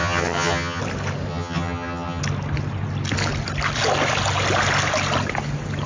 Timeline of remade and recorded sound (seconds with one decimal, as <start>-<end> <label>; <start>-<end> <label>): 0.0-0.8 remade; 0.8-1.3 recorded; 1.3-2.2 remade; 2.2-5.9 recorded